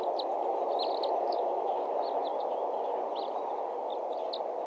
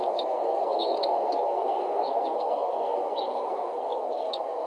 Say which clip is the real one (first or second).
first